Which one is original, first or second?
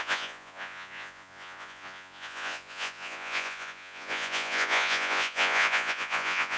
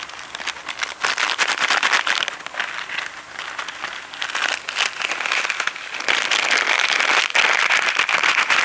second